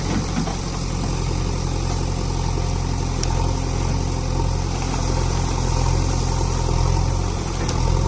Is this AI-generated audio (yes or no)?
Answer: no